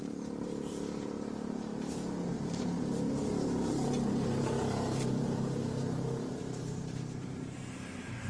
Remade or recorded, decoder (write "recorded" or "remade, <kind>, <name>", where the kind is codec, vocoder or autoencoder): remade, vocoder, BigVGAN v2